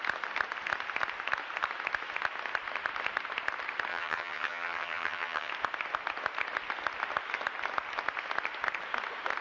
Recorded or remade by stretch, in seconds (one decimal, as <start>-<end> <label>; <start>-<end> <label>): 0.0-3.9 recorded; 3.9-5.5 remade; 5.5-9.4 recorded